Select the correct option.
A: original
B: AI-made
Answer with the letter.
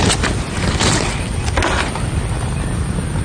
A